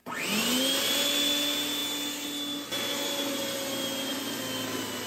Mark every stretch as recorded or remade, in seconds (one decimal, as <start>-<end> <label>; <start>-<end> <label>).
0.0-5.1 recorded